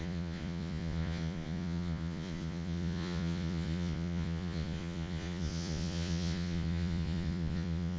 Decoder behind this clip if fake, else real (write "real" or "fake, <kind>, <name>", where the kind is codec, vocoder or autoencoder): fake, vocoder, Vocos